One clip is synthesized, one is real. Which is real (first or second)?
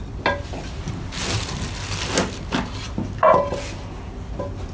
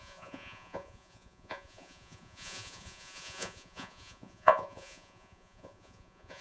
first